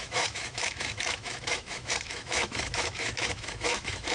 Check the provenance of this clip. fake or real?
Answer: fake